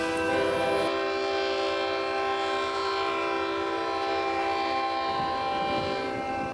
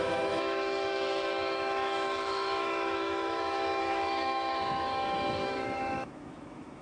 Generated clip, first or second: second